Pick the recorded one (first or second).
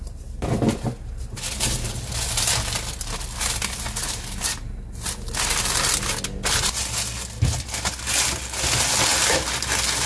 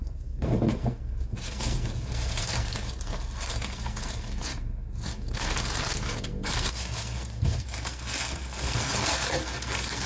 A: first